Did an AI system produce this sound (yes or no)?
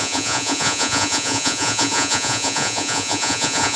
yes